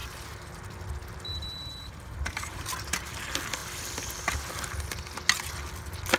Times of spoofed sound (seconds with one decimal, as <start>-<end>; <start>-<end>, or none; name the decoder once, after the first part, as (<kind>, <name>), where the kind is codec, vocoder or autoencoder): 0.0-0.5 (vocoder, BigVGAN v2); 1.0-3.1